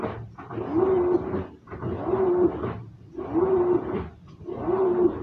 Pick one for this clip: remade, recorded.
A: recorded